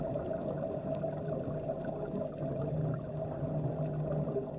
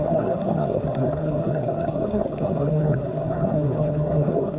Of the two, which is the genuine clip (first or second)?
first